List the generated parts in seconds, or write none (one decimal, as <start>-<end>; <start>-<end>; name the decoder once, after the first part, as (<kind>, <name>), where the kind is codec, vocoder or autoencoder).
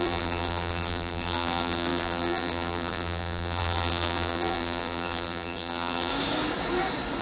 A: 0.0-6.1 (vocoder, BigVGAN v2)